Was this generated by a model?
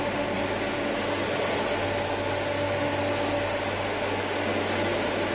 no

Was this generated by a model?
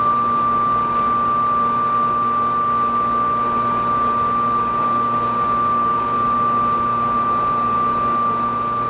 no